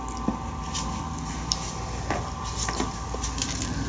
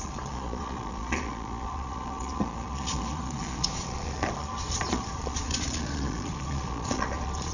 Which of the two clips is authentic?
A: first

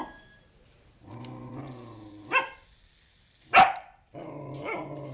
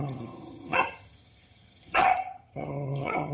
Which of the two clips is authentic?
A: first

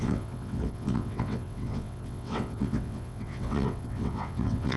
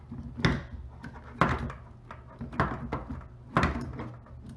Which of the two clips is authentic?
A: second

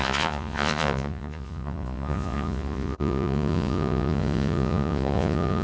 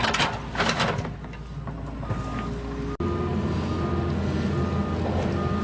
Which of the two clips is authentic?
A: second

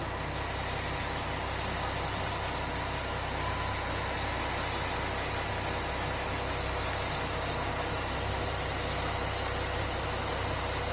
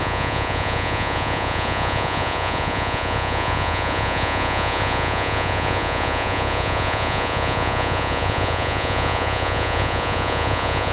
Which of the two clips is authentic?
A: first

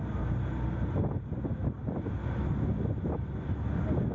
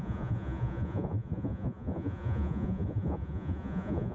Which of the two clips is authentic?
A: first